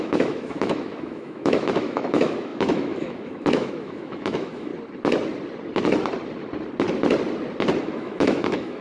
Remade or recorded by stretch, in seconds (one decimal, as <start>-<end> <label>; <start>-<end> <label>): 0.0-4.7 remade; 4.7-7.8 recorded; 7.8-8.8 remade